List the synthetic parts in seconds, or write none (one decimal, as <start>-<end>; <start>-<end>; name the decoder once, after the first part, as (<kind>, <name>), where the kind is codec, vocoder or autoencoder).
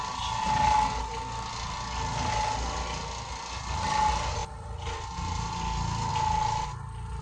none